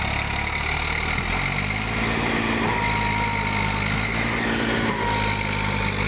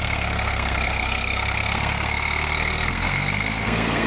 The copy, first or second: second